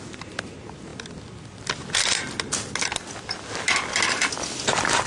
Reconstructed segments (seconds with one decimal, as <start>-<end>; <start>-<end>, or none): none